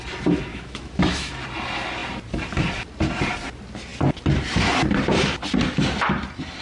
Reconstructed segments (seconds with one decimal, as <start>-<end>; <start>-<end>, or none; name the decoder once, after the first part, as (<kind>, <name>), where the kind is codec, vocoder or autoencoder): 0.5-1.3 (autoencoder, DAC-VAE)